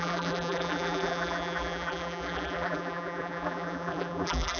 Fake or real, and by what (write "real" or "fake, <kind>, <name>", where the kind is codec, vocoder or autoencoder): fake, vocoder, BigVGAN v2